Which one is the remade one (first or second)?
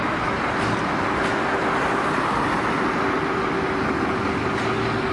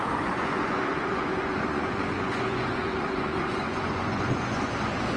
second